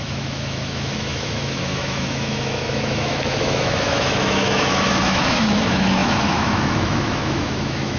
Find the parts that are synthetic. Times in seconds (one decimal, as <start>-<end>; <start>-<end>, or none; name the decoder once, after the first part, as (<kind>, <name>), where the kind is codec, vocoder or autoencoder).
0.0-8.0 (autoencoder, DAC-VAE)